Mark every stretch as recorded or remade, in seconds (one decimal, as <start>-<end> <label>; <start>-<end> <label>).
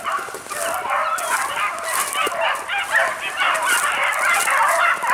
0.0-3.0 recorded; 3.0-4.0 remade; 4.0-5.1 recorded